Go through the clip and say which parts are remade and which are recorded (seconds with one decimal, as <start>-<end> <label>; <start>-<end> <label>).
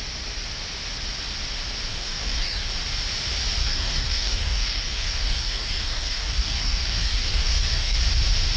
0.0-1.9 recorded; 1.9-2.7 remade; 2.7-3.6 recorded; 3.6-8.0 remade; 8.0-8.6 recorded